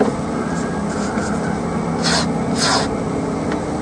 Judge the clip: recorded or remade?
recorded